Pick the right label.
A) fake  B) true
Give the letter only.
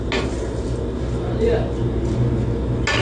B